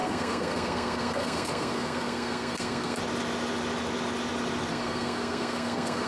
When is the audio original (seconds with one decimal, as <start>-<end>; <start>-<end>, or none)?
3.0-4.7